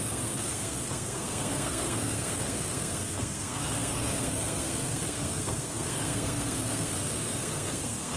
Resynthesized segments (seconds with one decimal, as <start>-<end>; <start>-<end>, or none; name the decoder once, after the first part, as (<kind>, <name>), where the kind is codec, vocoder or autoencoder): 0.0-8.2 (codec, SNAC)